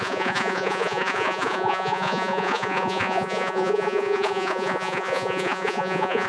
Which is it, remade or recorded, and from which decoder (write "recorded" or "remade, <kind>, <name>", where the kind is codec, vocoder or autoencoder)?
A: remade, vocoder, Vocos